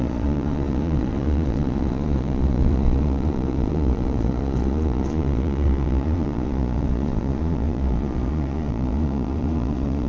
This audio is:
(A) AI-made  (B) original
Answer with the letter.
A